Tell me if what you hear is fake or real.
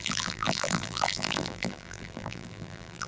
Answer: fake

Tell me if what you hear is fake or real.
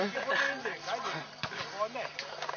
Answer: real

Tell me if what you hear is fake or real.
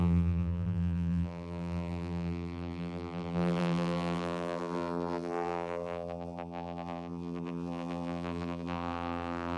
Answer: fake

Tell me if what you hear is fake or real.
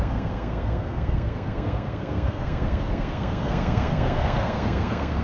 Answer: fake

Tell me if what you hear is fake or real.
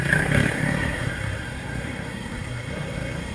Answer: fake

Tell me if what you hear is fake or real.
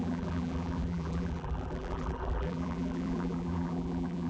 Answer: fake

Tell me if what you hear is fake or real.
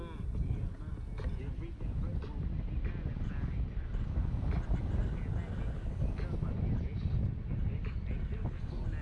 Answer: real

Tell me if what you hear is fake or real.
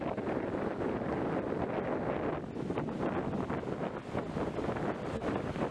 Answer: real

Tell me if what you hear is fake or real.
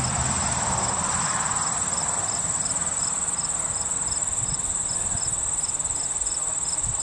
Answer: real